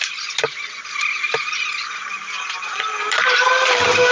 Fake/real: real